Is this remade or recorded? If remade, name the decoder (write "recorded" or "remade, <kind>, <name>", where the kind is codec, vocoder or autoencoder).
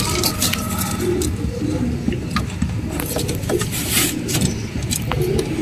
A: recorded